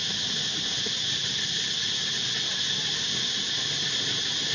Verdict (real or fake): real